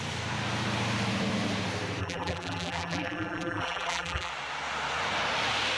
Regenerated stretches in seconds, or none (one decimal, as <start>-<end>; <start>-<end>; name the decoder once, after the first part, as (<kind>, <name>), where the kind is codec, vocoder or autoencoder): 2.0-4.3 (vocoder, BigVGAN v2)